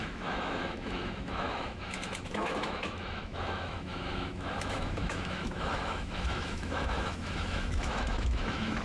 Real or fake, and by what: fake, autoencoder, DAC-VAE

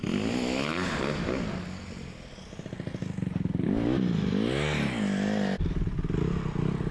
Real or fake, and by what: real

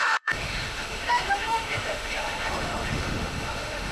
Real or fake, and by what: fake, autoencoder, DAC-VAE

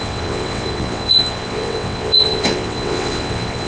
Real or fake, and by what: fake, vocoder, WaveNeXt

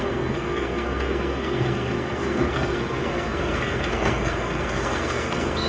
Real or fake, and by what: fake, codec, SNAC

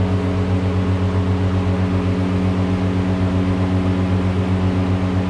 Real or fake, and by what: real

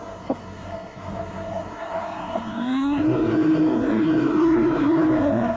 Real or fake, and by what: fake, codec, SNAC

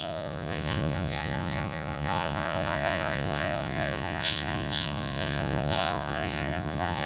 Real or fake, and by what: fake, vocoder, Vocos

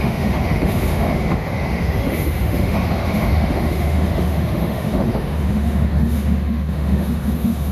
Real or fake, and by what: fake, autoencoder, DAC-VAE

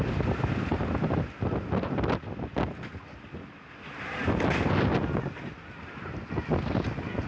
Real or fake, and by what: real